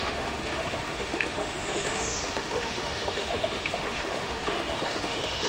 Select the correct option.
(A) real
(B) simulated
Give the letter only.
B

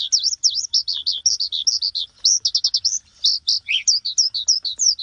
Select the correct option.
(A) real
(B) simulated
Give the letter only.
A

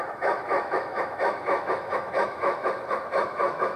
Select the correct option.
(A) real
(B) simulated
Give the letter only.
B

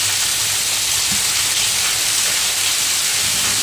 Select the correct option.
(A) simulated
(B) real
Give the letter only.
B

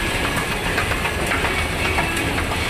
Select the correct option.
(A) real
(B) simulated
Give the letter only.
A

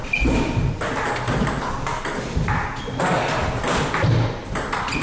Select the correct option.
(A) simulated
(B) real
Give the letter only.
B